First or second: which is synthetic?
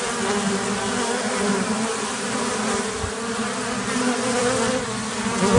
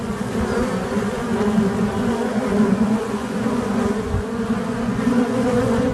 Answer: second